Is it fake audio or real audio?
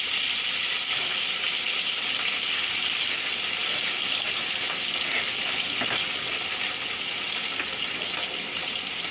real